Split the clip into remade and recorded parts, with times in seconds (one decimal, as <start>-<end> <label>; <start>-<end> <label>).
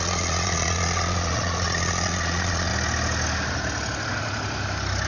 0.0-2.7 remade; 2.7-5.1 recorded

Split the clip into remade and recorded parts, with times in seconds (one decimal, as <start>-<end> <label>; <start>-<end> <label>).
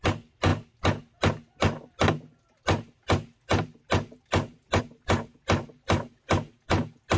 0.0-7.2 recorded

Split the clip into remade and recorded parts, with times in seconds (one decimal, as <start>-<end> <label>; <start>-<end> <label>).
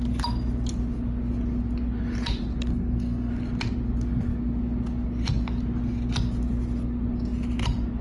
0.0-2.7 recorded; 2.7-3.3 remade; 3.3-8.0 recorded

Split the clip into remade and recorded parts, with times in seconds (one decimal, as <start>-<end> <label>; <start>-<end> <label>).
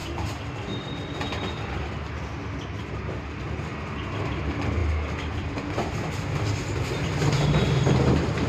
0.0-8.5 recorded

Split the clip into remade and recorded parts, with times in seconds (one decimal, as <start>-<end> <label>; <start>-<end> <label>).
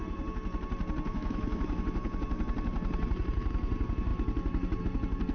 0.0-1.1 recorded; 1.1-1.8 remade; 1.8-5.3 recorded